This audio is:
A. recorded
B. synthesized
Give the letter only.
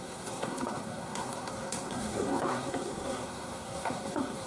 B